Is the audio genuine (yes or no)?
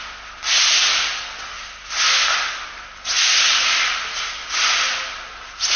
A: yes